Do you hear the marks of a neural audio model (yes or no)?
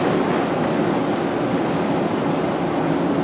no